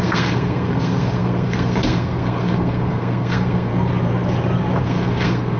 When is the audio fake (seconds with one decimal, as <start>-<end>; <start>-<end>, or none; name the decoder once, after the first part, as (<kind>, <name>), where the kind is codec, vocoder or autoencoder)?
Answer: 0.0-3.7 (codec, SNAC); 4.8-5.6